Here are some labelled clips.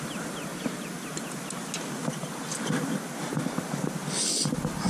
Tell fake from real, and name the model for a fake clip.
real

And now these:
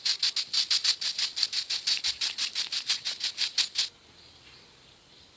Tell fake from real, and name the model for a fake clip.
real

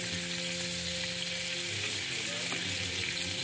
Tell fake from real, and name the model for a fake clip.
real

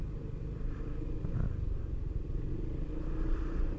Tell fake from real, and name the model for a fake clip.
real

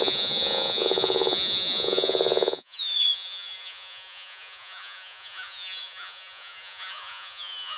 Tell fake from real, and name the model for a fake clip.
fake, vocoder, Vocos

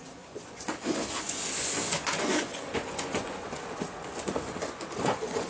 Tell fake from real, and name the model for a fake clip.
fake, vocoder, Vocos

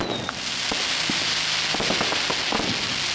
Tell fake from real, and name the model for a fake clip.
real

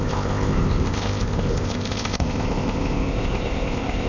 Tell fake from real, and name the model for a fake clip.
fake, codec, ZipCodec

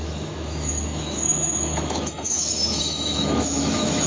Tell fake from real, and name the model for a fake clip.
fake, autoencoder, DAC-VAE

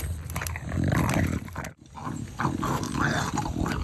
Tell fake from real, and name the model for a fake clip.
real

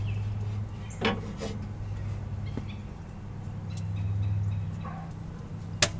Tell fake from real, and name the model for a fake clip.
real